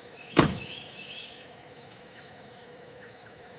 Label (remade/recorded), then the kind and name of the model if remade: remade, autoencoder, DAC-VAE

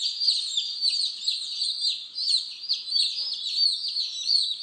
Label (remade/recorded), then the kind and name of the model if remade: recorded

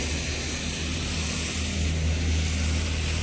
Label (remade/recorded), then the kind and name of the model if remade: recorded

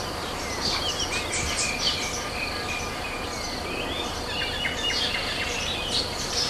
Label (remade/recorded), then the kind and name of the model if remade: recorded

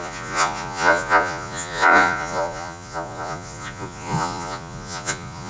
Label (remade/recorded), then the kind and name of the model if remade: remade, vocoder, Vocos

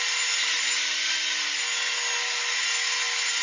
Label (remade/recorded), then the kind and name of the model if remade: recorded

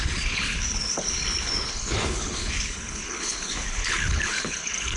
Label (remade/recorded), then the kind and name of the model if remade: remade, codec, HILCodec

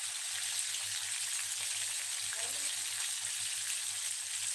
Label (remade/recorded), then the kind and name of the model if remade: recorded